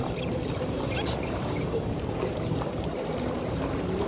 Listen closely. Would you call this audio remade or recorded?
remade